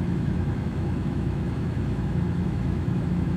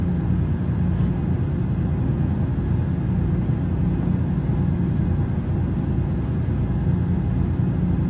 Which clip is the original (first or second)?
second